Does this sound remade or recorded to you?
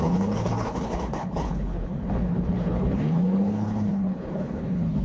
remade